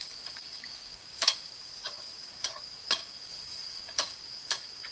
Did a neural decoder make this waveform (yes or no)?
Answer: yes